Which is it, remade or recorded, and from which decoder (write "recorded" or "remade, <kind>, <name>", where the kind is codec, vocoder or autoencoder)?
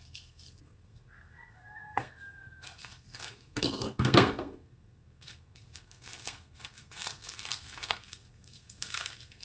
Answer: remade, codec, SNAC